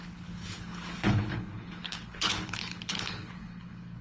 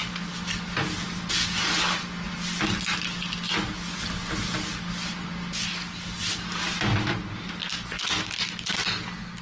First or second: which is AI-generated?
first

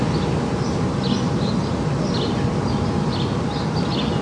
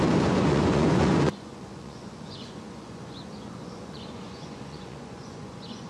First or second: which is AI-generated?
second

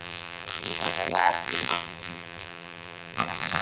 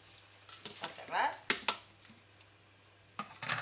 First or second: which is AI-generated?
first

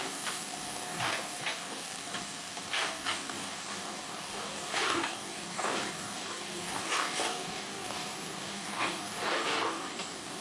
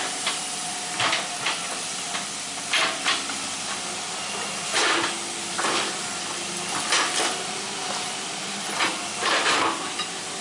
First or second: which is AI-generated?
first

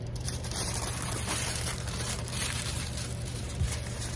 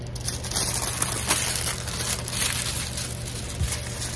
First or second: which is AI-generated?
first